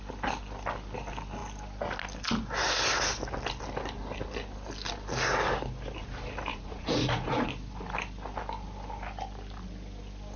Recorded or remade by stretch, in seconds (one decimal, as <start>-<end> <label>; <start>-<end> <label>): 0.0-6.5 recorded; 6.5-7.5 remade; 7.5-10.4 recorded